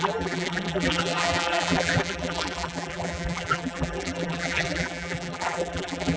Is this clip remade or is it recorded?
remade